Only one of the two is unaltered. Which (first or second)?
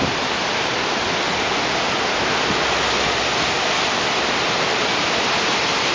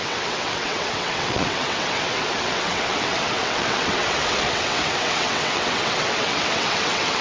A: first